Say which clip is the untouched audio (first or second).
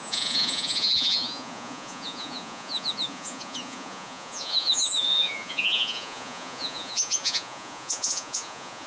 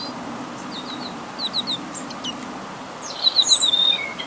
second